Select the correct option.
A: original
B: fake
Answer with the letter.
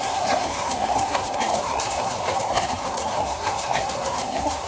B